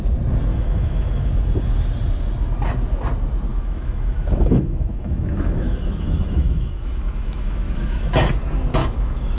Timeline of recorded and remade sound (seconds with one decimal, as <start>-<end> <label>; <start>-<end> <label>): 0.0-0.5 recorded; 0.5-1.3 remade; 1.3-3.5 recorded; 3.5-8.1 remade; 8.1-8.8 recorded; 8.8-9.4 remade